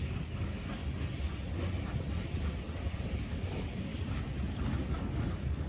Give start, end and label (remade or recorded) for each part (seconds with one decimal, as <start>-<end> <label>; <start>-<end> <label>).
0.0-0.8 remade; 0.8-3.3 recorded; 3.3-3.9 remade; 3.9-4.5 recorded; 4.5-5.7 remade